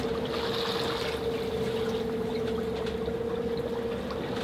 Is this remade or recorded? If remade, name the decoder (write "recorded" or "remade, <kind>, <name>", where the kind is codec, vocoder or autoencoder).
recorded